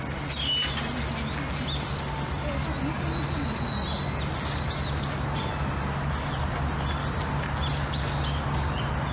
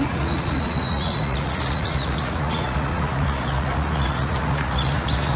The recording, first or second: first